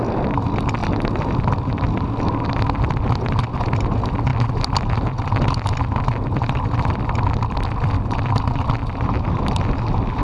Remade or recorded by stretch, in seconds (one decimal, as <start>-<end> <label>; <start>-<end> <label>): 0.0-10.2 recorded